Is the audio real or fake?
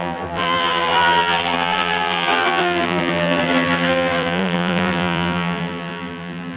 fake